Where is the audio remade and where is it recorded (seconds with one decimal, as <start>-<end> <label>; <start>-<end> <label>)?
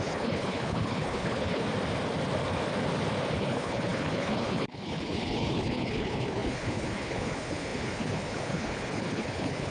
0.0-1.6 remade; 1.6-3.4 recorded; 3.4-9.7 remade